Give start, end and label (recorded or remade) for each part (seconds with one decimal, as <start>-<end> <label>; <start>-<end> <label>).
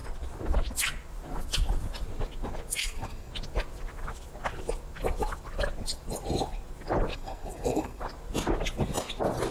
0.0-2.8 recorded; 2.8-3.3 remade; 3.3-7.1 recorded; 7.1-8.0 remade; 8.0-9.5 recorded